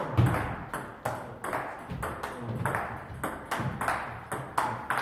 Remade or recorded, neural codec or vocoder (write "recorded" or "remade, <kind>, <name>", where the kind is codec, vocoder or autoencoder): recorded